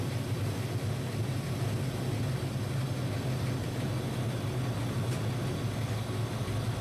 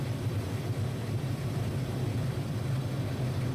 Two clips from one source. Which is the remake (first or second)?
second